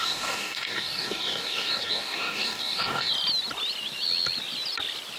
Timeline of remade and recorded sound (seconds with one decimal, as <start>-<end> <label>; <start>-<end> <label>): 0.0-3.1 remade; 3.1-5.2 recorded